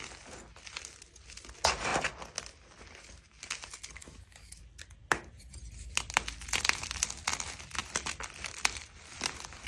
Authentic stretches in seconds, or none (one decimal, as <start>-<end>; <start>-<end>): 0.0-4.0; 4.6-9.7